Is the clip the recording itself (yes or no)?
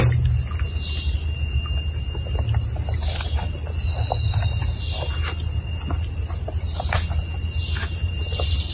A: yes